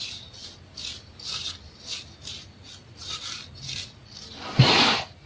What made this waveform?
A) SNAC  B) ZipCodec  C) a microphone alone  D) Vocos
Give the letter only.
C